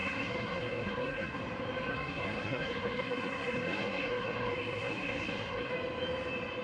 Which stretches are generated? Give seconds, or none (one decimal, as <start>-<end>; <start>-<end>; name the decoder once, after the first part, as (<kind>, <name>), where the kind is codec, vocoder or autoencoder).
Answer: 0.0-1.4 (codec, SNAC); 1.9-5.7